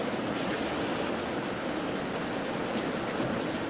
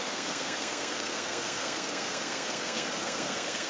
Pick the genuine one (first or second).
first